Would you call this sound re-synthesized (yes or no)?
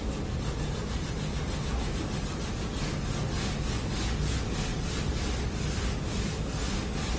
no